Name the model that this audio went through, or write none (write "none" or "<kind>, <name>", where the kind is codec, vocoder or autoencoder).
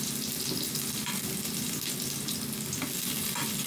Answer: none